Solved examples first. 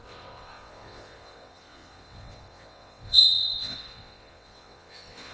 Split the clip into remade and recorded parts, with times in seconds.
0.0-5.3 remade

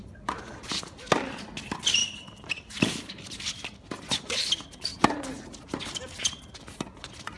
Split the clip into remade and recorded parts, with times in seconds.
0.0-2.0 recorded; 2.0-3.1 remade; 3.1-4.9 recorded; 4.9-6.1 remade; 6.1-7.4 recorded

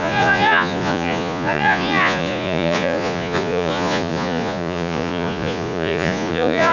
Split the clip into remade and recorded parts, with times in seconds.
0.0-6.7 remade